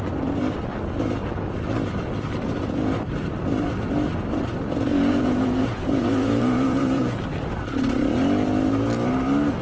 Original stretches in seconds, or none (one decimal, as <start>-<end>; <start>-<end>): 0.0-4.9; 7.2-9.6